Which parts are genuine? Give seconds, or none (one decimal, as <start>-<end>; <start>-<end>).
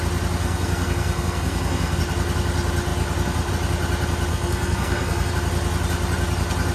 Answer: 0.0-0.4; 2.0-4.3; 5.3-6.7